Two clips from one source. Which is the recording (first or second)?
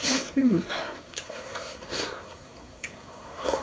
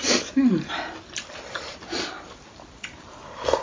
second